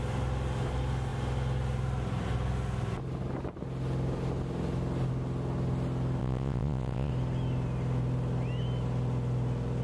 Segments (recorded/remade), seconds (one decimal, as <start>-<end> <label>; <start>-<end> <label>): 0.0-6.2 recorded; 6.2-7.1 remade; 7.1-9.8 recorded